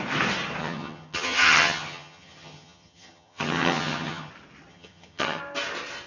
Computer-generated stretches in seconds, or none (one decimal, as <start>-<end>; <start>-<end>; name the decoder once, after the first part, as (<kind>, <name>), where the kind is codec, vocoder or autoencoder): 0.6-4.3 (vocoder, HiFi-GAN); 4.7-5.4